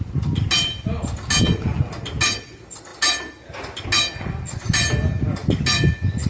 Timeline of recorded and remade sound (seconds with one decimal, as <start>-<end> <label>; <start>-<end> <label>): 0.0-6.3 recorded

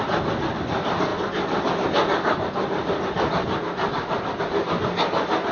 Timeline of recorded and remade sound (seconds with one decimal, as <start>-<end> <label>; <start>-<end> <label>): 0.0-5.5 recorded

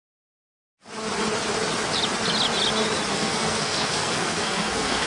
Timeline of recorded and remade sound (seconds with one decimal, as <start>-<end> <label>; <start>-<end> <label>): 0.0-3.1 recorded; 3.1-5.1 remade

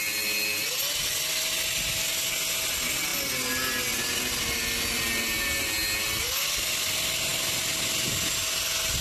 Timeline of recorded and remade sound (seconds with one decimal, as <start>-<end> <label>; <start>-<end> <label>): 0.0-9.0 recorded

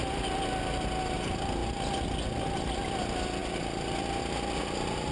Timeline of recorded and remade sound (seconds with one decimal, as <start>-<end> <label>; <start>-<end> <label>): 0.0-5.1 recorded

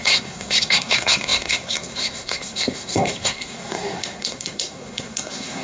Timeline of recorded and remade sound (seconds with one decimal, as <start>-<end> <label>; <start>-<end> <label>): 0.0-5.6 remade

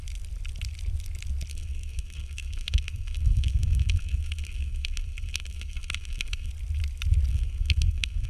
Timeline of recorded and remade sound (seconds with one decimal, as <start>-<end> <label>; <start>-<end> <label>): 0.0-1.5 recorded; 1.5-6.5 remade; 6.5-7.3 recorded; 7.3-8.3 remade

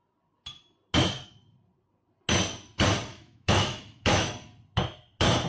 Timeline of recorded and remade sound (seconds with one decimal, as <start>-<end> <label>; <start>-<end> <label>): 0.0-3.1 recorded; 3.1-4.3 remade; 4.3-5.5 recorded